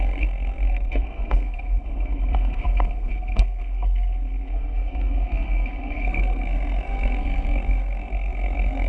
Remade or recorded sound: remade